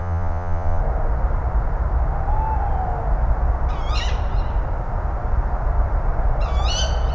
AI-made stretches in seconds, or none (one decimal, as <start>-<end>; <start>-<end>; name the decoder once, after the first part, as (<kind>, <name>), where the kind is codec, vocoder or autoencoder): 0.0-0.8 (vocoder, Vocos)